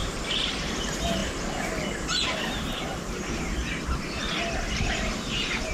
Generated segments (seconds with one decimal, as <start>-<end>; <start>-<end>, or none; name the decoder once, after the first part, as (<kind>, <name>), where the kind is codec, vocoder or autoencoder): 0.0-0.7 (vocoder, BigVGAN v2)